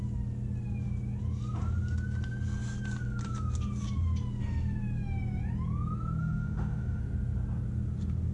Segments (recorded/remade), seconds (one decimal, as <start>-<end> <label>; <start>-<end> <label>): 0.0-6.2 recorded; 6.2-7.0 remade; 7.0-8.3 recorded